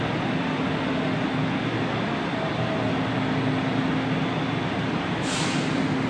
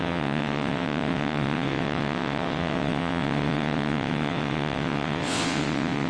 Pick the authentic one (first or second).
first